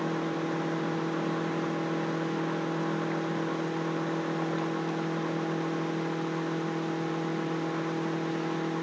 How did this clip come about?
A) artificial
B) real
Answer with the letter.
B